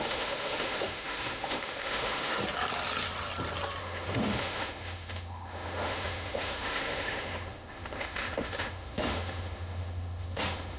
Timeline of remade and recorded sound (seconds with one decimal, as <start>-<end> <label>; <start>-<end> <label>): 0.0-2.4 remade; 2.4-3.8 recorded; 3.8-10.8 remade